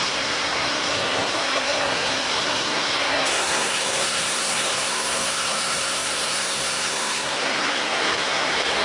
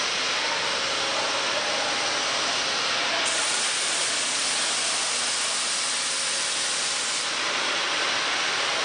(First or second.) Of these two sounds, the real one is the second